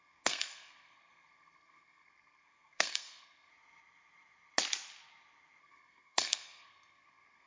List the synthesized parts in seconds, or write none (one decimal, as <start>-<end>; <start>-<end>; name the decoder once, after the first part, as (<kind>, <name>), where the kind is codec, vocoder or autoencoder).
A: 0.0-3.5 (codec, SNAC); 5.6-7.5